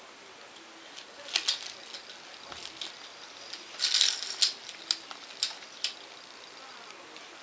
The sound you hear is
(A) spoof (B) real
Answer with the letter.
B